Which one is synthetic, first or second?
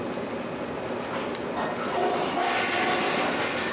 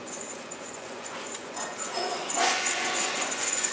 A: second